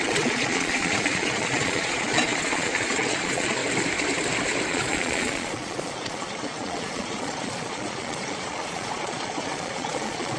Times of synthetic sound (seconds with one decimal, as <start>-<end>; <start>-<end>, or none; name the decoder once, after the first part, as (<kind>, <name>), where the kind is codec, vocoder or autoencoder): 0.0-3.6 (vocoder, Vocos); 4.7-10.4